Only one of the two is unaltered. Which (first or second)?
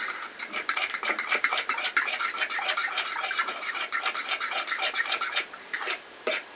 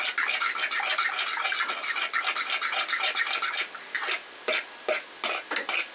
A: second